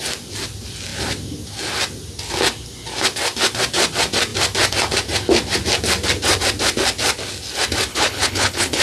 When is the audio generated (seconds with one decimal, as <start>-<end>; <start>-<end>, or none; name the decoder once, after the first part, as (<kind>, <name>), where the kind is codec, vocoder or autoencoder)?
7.9-8.8 (codec, HILCodec)

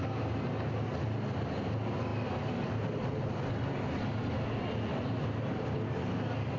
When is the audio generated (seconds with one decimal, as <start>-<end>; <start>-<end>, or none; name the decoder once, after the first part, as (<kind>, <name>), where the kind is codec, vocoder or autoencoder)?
none